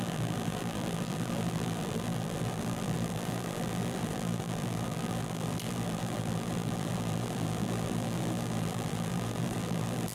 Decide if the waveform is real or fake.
fake